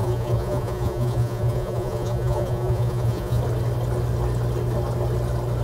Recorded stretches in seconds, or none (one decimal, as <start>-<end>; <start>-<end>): 3.4-5.6